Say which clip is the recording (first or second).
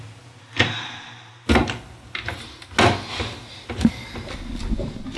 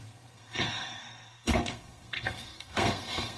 first